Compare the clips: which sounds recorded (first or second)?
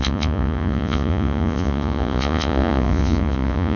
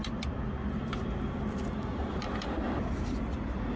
second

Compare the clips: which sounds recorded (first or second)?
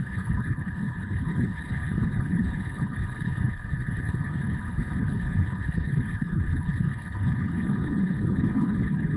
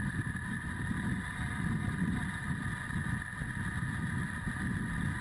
second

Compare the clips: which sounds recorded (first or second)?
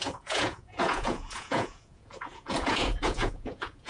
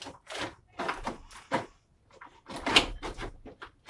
second